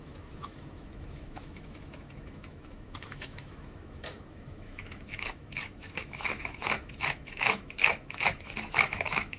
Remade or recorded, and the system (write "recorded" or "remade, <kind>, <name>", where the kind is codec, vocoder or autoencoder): remade, autoencoder, DAC-VAE